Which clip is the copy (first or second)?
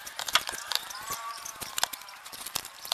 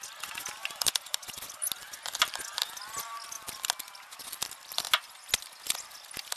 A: first